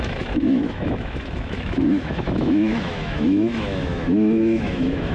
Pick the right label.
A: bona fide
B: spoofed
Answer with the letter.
B